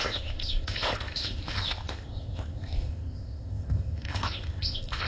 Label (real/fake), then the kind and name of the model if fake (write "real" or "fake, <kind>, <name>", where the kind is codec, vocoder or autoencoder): fake, codec, ZipCodec